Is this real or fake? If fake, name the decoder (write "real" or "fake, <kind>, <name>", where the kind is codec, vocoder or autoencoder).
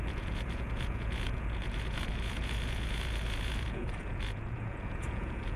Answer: fake, vocoder, Vocos